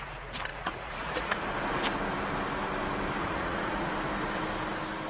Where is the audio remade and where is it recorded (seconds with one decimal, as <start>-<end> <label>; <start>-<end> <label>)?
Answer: 0.0-0.5 recorded; 0.5-1.4 remade; 1.4-3.2 recorded; 3.2-3.9 remade; 3.9-5.1 recorded